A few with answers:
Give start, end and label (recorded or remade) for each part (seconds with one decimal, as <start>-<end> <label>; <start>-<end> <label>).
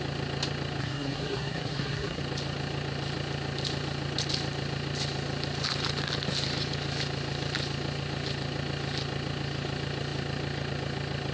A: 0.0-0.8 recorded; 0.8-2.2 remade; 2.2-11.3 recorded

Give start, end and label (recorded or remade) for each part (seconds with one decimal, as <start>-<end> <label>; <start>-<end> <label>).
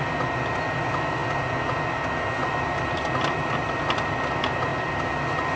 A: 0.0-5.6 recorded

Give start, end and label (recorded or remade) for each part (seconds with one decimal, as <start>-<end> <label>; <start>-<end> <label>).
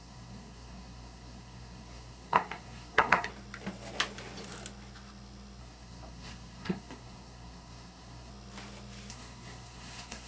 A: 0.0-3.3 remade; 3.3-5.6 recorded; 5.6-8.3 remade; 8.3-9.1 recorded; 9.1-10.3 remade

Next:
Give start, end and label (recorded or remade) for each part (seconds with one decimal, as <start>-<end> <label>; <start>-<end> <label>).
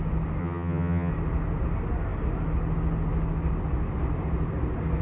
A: 0.0-0.4 recorded; 0.4-1.1 remade; 1.1-5.0 recorded